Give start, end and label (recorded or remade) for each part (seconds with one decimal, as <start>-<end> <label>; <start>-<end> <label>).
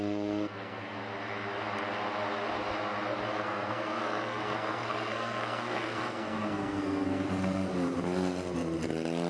0.0-1.0 remade; 1.0-3.3 recorded; 3.3-7.7 remade; 7.7-9.3 recorded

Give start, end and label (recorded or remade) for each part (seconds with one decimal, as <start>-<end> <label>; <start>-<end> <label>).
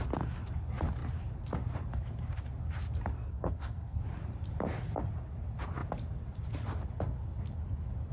0.0-3.1 recorded; 3.1-4.0 remade; 4.0-8.1 recorded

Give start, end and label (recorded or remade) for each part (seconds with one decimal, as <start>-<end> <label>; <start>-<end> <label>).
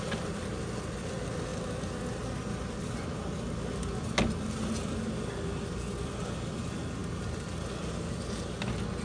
0.0-9.0 recorded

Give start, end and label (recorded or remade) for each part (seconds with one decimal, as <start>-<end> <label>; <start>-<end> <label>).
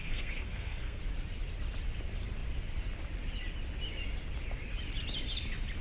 0.0-1.0 remade; 1.0-5.8 recorded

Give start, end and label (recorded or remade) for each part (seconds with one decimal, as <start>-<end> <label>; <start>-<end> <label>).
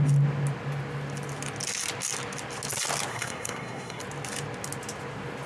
0.0-3.1 recorded; 3.1-4.0 remade; 4.0-5.5 recorded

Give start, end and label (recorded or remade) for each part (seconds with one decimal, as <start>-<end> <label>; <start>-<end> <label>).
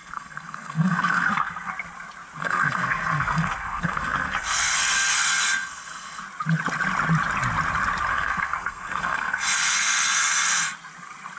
0.0-1.7 remade; 1.7-2.4 recorded; 2.4-6.2 remade; 6.2-8.1 recorded; 8.1-10.5 remade; 10.5-11.4 recorded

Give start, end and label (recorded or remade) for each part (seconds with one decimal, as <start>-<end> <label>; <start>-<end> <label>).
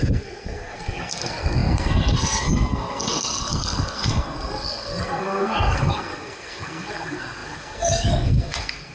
0.0-8.9 remade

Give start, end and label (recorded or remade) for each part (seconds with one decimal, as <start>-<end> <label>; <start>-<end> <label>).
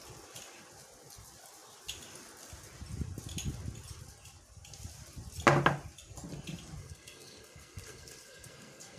0.0-6.8 recorded; 6.8-9.0 remade